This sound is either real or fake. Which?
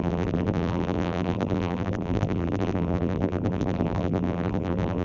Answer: fake